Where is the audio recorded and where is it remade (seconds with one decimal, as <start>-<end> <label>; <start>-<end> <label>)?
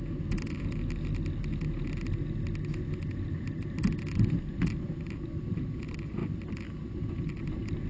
0.0-7.9 recorded